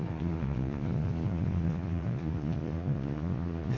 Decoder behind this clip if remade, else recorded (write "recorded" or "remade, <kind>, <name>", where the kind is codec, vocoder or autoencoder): remade, vocoder, Vocos